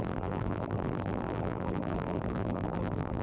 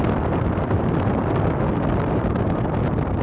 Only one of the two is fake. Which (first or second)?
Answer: first